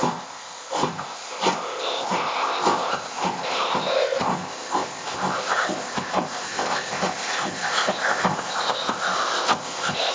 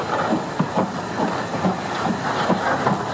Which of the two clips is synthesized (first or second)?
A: first